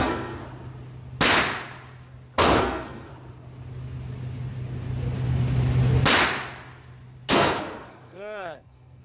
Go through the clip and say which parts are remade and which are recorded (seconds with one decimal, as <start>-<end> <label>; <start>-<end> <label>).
0.0-0.4 remade; 0.4-2.6 recorded; 2.6-3.1 remade; 3.1-7.3 recorded; 7.3-9.0 remade

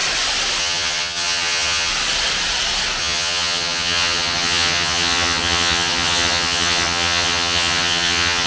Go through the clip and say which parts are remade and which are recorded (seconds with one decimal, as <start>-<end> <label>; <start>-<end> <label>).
0.0-0.6 recorded; 0.6-1.9 remade; 1.9-3.0 recorded; 3.0-8.5 remade